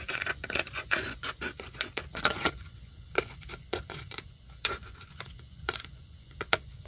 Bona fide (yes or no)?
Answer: no